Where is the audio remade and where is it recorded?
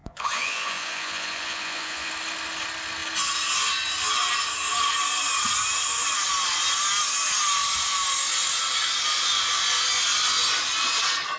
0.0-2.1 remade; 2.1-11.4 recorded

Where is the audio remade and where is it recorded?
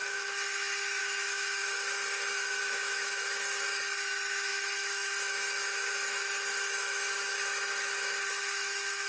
0.0-9.1 remade